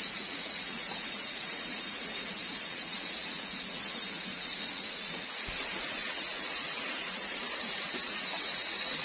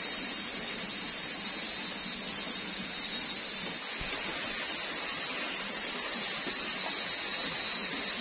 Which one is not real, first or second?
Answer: first